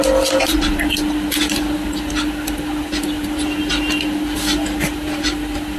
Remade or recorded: recorded